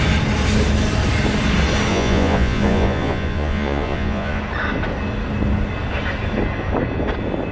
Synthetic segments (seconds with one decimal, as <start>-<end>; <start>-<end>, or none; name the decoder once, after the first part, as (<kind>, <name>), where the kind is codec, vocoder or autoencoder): 1.9-4.4 (vocoder, Vocos)